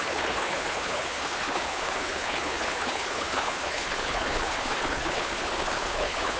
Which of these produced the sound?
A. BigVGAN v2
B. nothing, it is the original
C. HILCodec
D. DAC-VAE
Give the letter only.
C